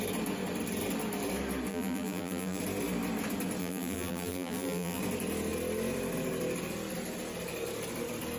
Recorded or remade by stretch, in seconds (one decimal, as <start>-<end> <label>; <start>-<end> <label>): 0.0-1.7 recorded; 1.7-2.6 remade; 2.6-3.6 recorded; 3.6-5.0 remade; 5.0-8.4 recorded